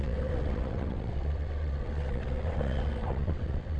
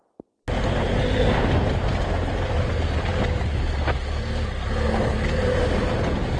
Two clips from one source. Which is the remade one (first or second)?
first